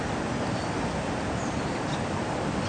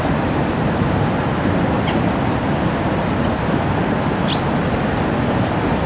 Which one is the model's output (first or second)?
first